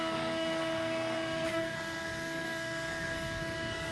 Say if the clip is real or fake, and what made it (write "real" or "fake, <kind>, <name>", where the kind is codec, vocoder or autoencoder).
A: fake, codec, SNAC